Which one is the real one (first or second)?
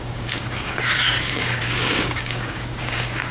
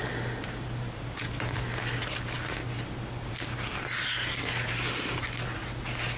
second